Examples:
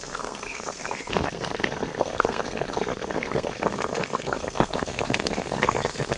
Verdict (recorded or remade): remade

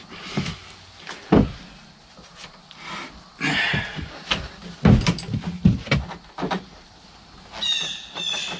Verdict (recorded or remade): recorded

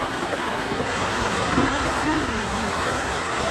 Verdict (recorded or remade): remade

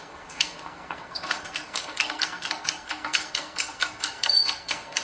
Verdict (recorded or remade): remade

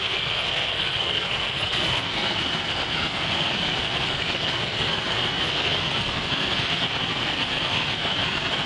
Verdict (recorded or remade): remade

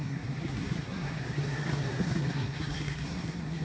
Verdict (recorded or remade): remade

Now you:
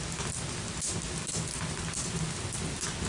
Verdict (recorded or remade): recorded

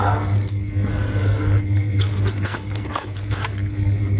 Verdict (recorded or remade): remade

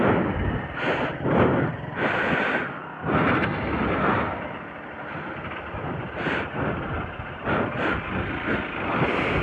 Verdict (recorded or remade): recorded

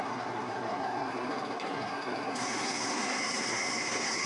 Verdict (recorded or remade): remade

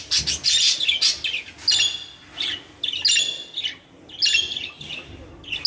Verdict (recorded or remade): recorded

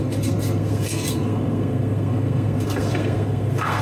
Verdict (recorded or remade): remade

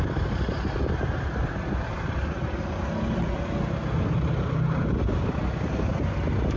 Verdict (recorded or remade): recorded